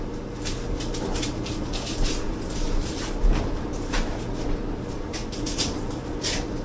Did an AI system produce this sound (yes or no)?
no